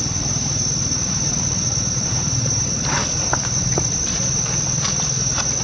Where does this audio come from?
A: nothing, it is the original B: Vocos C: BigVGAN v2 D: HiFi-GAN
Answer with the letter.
C